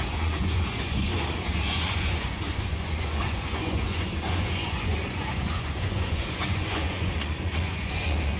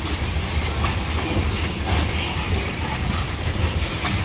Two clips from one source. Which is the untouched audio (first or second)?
second